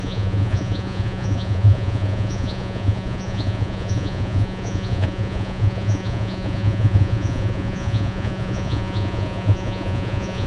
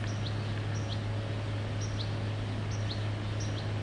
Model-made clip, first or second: first